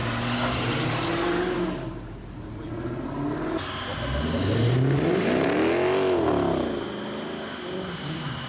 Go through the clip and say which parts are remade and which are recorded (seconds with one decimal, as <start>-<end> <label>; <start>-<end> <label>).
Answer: 0.0-8.5 recorded